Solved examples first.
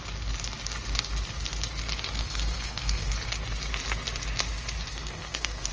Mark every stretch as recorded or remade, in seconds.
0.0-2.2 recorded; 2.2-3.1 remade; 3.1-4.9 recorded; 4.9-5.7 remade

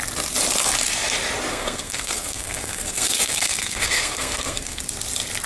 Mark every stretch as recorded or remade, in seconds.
0.0-1.5 recorded; 1.5-4.8 remade; 4.8-5.5 recorded

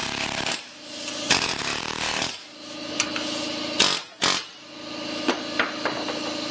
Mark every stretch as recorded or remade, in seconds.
0.0-6.5 recorded

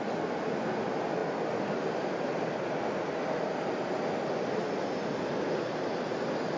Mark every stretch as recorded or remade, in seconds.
0.0-6.6 recorded